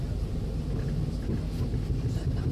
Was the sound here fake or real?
real